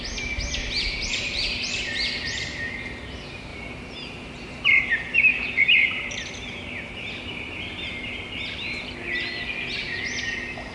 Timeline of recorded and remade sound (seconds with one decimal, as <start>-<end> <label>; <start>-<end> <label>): 0.0-1.1 recorded; 1.1-1.6 remade; 1.6-3.5 recorded; 3.5-4.8 remade; 4.8-5.3 recorded; 5.3-7.1 remade; 7.1-10.7 recorded